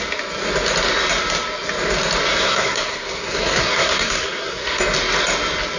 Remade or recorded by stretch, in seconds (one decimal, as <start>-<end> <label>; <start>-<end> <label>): 0.0-2.3 recorded; 2.3-4.8 remade; 4.8-5.8 recorded